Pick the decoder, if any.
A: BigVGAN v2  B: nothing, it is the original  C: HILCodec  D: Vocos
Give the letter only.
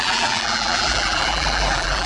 A